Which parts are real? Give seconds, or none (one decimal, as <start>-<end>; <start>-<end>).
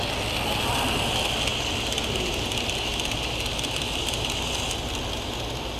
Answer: 0.0-5.8